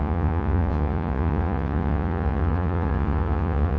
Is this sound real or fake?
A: fake